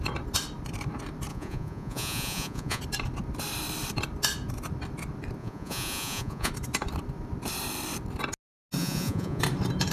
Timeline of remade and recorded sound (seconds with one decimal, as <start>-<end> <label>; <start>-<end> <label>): 0.0-1.3 recorded; 1.3-2.8 remade; 2.8-5.4 recorded; 5.4-6.5 remade; 6.5-8.8 recorded; 8.8-9.4 remade; 9.4-9.9 recorded